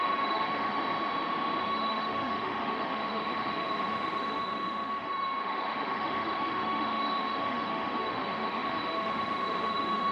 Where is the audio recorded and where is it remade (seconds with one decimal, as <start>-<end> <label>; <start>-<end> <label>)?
0.0-0.8 remade; 0.8-1.6 recorded; 1.6-10.1 remade

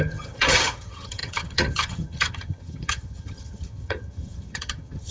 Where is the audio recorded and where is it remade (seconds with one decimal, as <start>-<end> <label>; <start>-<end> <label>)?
0.0-5.1 remade

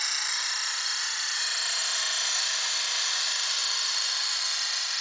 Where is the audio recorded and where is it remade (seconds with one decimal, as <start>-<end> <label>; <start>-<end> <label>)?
0.0-5.0 recorded

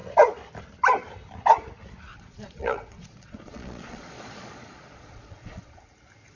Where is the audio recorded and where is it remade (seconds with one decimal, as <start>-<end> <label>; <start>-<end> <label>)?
0.0-2.1 recorded; 2.1-5.8 remade; 5.8-6.4 recorded

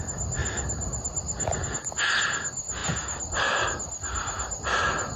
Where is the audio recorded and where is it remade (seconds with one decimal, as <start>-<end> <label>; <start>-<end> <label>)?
0.0-5.2 recorded

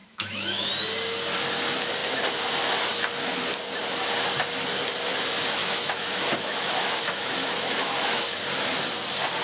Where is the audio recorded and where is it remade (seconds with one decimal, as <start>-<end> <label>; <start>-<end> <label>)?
0.0-0.7 remade; 0.7-5.6 recorded; 5.6-8.4 remade; 8.4-9.4 recorded

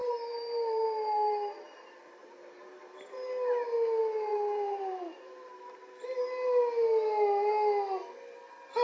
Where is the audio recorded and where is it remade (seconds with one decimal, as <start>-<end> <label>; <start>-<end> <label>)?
0.0-3.1 remade; 3.1-4.3 recorded; 4.3-5.6 remade; 5.6-8.8 recorded